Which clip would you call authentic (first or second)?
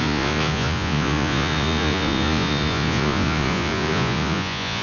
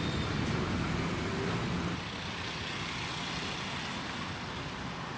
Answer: second